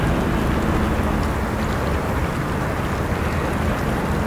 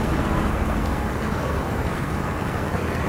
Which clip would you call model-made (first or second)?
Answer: second